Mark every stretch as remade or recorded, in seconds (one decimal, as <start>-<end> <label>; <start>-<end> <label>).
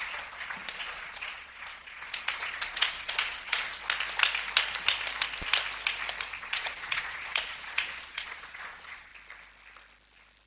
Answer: 0.0-3.8 remade; 3.8-6.4 recorded; 6.4-9.1 remade; 9.1-10.5 recorded